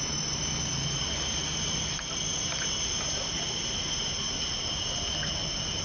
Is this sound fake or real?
real